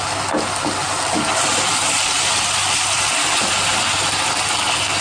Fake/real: real